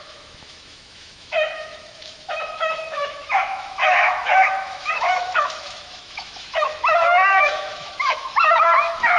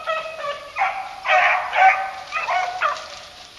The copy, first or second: first